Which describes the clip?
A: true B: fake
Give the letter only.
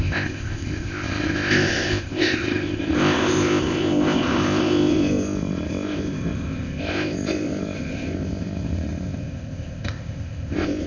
B